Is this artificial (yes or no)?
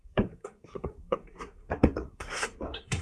yes